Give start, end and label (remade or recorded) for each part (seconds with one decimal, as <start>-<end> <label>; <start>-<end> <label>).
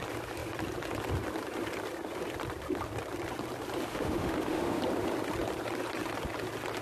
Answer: 0.0-3.9 recorded; 3.9-4.8 remade; 4.8-6.8 recorded